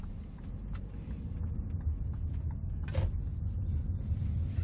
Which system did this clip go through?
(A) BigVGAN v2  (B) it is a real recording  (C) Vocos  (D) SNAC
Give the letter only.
B